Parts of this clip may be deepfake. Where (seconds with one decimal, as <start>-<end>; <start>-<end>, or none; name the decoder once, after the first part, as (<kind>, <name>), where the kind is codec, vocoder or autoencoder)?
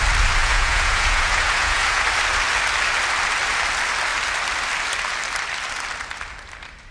0.4-2.0 (vocoder, Vocos)